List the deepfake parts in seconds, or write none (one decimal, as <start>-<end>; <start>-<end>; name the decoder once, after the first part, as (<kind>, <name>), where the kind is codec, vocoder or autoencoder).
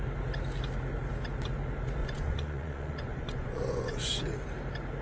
2.0-4.3 (vocoder, Vocos)